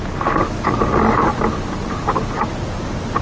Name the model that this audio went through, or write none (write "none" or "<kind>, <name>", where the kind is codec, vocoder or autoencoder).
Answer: none